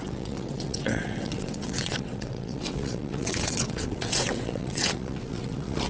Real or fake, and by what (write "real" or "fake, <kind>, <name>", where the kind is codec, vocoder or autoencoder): fake, vocoder, WaveNeXt